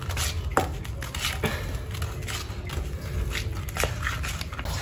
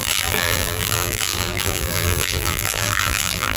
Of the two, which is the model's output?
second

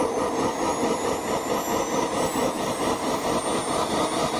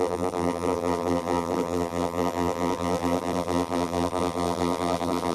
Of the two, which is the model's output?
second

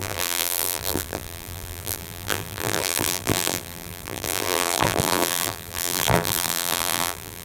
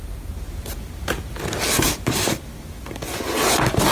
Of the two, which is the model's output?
first